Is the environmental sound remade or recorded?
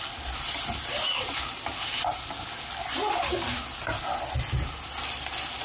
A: recorded